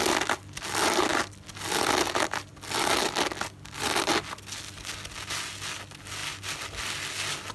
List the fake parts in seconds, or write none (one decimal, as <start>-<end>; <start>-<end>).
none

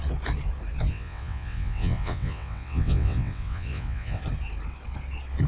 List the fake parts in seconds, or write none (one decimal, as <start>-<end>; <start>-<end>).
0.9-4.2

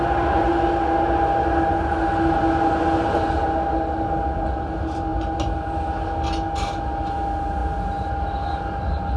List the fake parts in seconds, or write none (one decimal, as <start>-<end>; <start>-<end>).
none

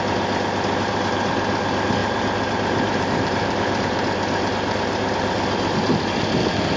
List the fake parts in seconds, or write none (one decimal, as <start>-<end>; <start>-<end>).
2.0-6.1

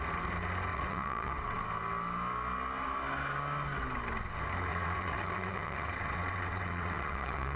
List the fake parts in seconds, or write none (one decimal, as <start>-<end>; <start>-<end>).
0.7-1.6; 4.7-7.6